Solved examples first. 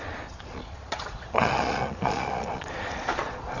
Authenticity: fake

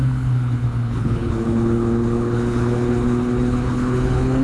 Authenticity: fake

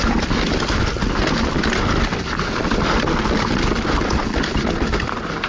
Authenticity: real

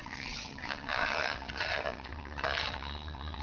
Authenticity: fake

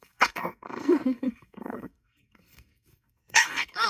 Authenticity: fake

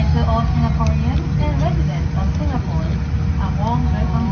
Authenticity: real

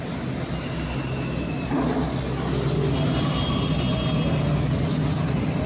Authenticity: real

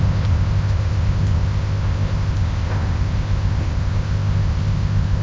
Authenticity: fake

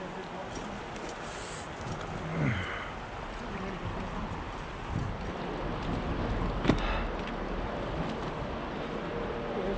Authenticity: real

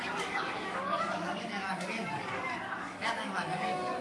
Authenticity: fake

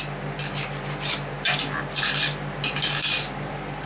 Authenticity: real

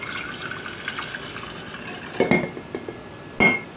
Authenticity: real